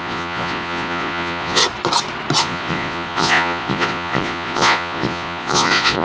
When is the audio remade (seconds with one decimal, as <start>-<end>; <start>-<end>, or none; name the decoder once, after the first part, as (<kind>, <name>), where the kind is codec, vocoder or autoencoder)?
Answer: 0.0-1.6 (vocoder, Vocos); 2.4-6.0